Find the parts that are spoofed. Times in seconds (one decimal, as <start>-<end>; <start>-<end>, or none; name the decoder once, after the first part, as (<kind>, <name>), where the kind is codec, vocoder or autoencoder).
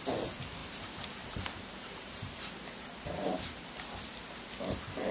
0.6-3.7 (vocoder, BigVGAN v2)